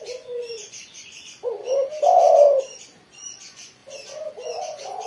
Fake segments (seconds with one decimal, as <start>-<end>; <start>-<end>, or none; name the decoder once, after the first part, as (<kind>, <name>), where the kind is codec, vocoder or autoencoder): 0.0-1.6 (vocoder, Vocos); 3.1-3.8; 4.3-5.1